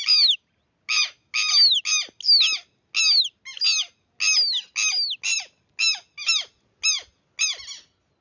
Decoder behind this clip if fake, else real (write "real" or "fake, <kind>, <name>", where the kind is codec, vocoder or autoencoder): real